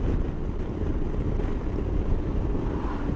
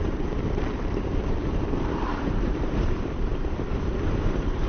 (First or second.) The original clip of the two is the first